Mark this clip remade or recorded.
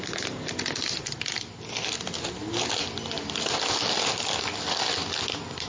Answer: recorded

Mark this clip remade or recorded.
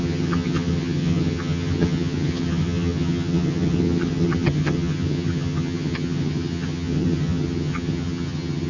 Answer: remade